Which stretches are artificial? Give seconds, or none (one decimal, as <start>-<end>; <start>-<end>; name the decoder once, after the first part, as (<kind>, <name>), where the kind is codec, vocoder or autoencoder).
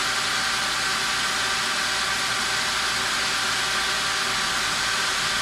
none